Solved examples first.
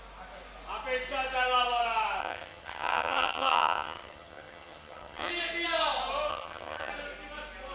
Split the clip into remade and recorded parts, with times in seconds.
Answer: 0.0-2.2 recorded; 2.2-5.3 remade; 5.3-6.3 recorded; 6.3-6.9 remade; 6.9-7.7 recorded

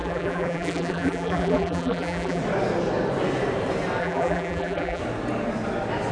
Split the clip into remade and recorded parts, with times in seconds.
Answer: 0.0-2.4 remade; 2.4-4.0 recorded; 4.0-5.0 remade; 5.0-6.1 recorded

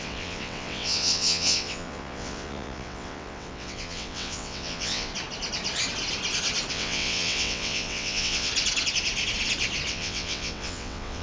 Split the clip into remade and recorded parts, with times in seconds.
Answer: 0.0-5.1 remade; 5.1-6.7 recorded; 6.7-8.5 remade; 8.5-9.9 recorded; 9.9-11.2 remade

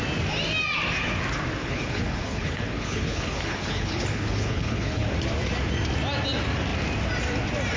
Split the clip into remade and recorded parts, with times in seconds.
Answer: 0.0-1.6 recorded; 1.6-5.1 remade; 5.1-7.8 recorded

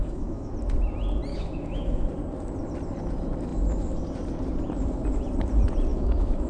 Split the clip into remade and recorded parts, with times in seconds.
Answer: 0.0-0.5 remade; 0.5-1.3 recorded; 1.3-2.1 remade; 2.1-5.9 recorded; 5.9-6.5 remade

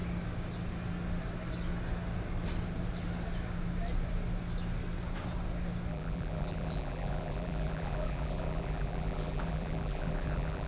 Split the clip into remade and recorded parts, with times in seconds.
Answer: 0.0-5.9 recorded; 5.9-10.7 remade

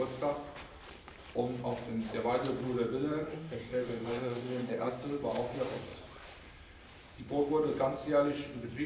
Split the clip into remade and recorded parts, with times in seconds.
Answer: 0.0-3.3 recorded; 3.3-4.9 remade; 4.9-8.9 recorded